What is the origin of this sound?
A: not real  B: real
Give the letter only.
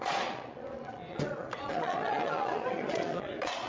A